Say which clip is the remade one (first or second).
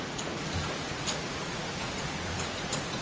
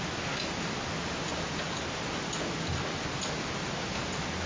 first